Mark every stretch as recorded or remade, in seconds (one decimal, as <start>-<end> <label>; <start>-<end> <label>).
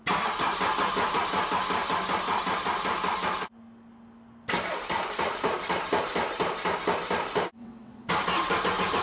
0.0-7.6 recorded; 7.6-8.1 remade; 8.1-9.0 recorded